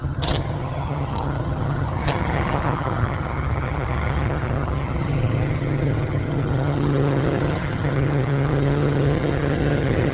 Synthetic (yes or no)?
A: yes